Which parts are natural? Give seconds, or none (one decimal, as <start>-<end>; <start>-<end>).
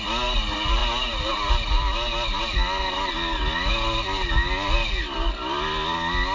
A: 0.0-6.3